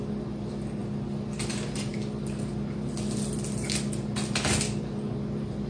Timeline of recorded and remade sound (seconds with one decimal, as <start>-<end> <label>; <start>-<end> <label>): 0.0-5.7 recorded

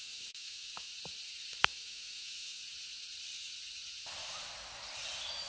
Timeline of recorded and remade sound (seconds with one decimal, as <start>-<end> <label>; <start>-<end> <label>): 0.0-0.9 remade; 0.9-1.6 recorded; 1.6-2.6 remade; 2.6-5.5 recorded

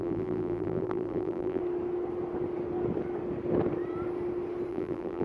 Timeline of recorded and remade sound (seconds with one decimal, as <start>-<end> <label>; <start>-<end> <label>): 0.0-1.6 remade; 1.6-4.7 recorded; 4.7-5.2 remade

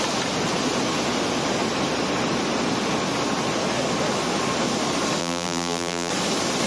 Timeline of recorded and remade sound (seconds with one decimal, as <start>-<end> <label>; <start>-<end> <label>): 0.0-5.2 recorded; 5.2-6.1 remade; 6.1-6.7 recorded

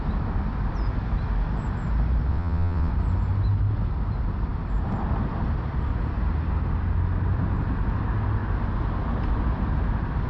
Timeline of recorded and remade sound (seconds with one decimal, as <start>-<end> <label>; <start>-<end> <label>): 0.0-2.3 recorded; 2.3-2.9 remade; 2.9-10.3 recorded

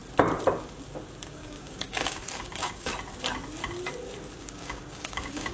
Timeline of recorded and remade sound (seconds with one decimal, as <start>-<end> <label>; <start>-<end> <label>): 0.0-1.3 recorded; 1.3-2.9 remade; 2.9-4.4 recorded; 4.4-5.5 remade

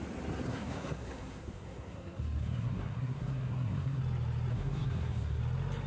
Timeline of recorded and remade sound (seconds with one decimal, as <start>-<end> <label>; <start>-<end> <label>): 0.0-0.5 recorded; 0.5-4.0 remade; 4.0-4.5 recorded; 4.5-5.4 remade; 5.4-5.9 recorded

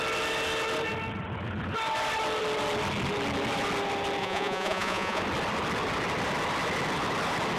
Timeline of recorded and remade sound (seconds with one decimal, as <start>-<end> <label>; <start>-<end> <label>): 0.0-4.2 recorded; 4.2-5.2 remade; 5.2-7.6 recorded